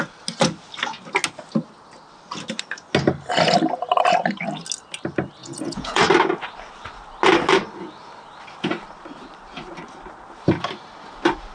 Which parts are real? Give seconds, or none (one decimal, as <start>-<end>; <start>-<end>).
0.0-5.4; 6.0-11.5